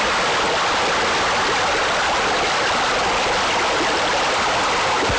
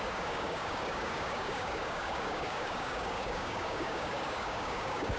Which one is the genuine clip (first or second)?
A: first